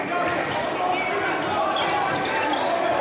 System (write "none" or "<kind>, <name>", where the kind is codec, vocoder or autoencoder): none